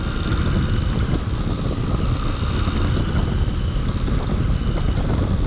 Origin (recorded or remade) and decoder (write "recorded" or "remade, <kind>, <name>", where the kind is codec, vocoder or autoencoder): recorded